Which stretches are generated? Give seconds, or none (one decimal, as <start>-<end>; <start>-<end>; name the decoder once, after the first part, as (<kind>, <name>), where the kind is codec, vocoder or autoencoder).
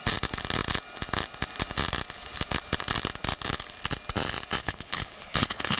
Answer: 4.6-5.8 (codec, HILCodec)